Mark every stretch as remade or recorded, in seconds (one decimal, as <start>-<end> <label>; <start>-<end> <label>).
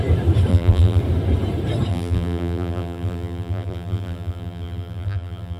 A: 0.0-0.5 recorded; 0.5-1.0 remade; 1.0-1.9 recorded; 1.9-5.6 remade